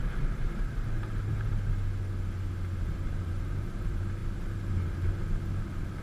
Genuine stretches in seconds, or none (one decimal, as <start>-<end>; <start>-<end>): 1.5-3.2; 4.2-5.6